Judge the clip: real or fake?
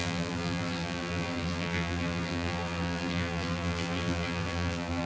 fake